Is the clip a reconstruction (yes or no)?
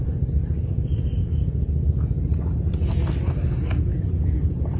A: no